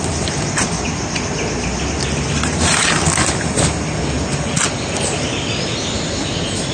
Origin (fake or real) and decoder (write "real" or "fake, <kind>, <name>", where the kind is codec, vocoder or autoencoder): real